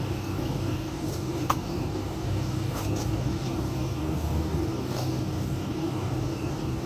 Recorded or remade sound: remade